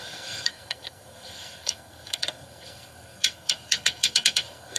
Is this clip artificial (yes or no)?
yes